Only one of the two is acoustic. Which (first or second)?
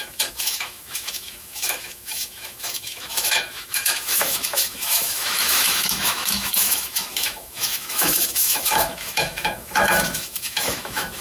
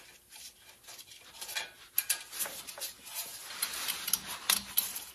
second